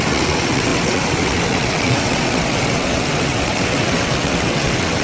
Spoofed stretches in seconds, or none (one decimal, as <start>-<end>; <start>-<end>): 0.0-5.0